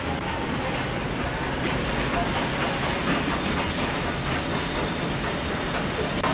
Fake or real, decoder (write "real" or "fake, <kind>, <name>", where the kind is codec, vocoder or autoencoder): real